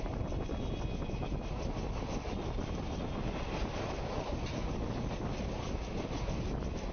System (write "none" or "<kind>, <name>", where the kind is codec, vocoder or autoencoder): none